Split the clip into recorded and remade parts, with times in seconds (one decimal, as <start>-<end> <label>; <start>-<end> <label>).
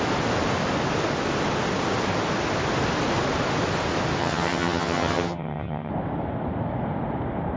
0.0-4.2 recorded; 4.2-5.9 remade; 5.9-7.6 recorded